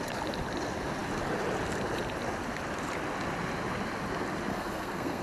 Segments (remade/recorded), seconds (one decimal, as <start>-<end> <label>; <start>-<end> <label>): 0.0-4.5 recorded; 4.5-5.2 remade